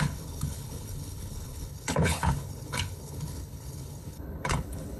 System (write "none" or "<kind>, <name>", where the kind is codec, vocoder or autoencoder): codec, HILCodec